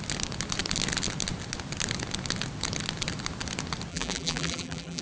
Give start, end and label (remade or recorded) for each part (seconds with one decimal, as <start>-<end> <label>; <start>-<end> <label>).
0.0-3.9 recorded; 3.9-5.0 remade